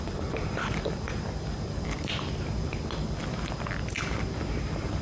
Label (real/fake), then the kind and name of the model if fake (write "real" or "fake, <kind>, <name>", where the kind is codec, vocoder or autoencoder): fake, vocoder, BigVGAN v2